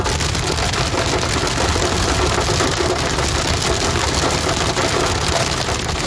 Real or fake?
real